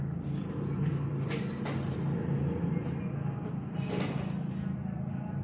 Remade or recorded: recorded